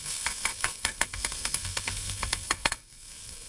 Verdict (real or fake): fake